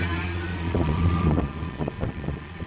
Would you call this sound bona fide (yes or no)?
no